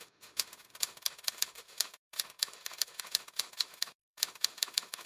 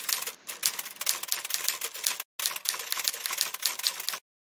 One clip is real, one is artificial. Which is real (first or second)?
second